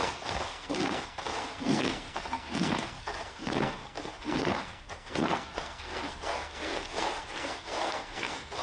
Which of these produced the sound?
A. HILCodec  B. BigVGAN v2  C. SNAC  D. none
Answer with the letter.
C